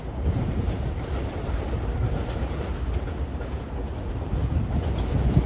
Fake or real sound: real